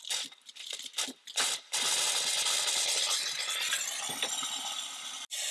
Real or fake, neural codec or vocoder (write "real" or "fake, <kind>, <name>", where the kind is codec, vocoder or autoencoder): real